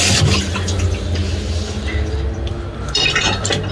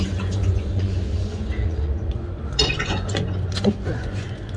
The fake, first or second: second